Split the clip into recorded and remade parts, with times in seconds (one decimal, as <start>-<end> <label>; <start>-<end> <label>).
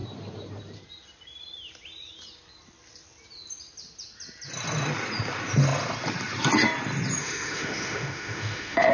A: 0.0-7.2 recorded; 7.2-8.9 remade